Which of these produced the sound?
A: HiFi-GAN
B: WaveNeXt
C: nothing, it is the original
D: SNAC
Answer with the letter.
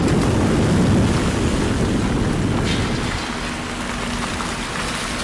C